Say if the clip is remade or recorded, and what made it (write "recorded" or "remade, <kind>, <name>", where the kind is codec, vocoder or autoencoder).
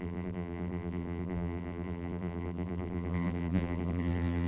remade, vocoder, BigVGAN v2